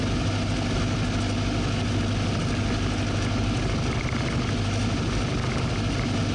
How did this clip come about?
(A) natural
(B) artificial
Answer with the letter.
A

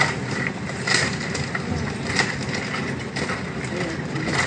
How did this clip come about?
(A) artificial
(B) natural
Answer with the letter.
B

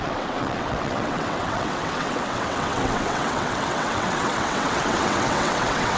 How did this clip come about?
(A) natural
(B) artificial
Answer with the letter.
B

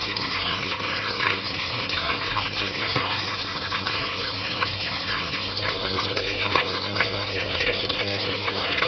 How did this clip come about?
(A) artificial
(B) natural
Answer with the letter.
A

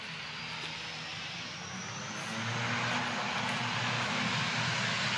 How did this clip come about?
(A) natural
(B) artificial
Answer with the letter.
A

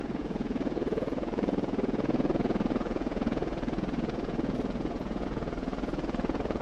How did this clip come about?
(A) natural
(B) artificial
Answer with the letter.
B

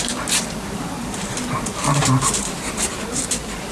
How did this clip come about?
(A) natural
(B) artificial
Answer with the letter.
B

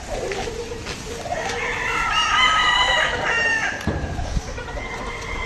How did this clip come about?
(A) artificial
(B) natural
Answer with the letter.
B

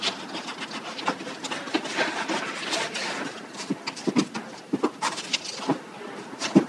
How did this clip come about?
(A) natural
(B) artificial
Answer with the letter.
A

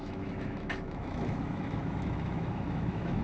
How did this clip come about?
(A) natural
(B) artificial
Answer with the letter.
B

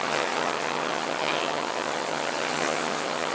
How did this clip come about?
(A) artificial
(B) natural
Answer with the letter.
A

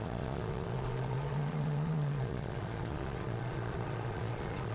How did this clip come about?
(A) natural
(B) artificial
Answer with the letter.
B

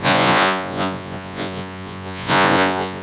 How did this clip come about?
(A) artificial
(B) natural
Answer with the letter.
A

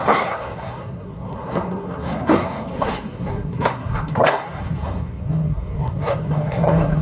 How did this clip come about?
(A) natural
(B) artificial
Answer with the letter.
B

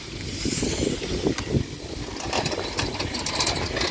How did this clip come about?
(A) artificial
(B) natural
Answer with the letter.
B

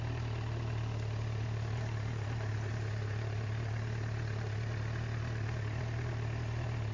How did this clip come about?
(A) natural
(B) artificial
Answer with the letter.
A